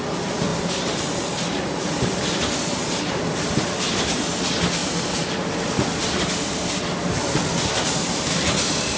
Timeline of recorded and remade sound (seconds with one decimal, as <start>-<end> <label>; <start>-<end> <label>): 0.0-0.5 recorded; 0.5-2.2 remade; 2.2-4.8 recorded; 4.8-5.7 remade; 5.7-9.0 recorded